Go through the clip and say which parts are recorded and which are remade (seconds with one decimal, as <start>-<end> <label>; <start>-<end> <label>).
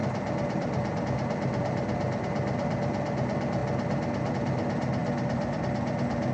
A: 0.0-1.0 remade; 1.0-3.6 recorded; 3.6-4.3 remade; 4.3-6.3 recorded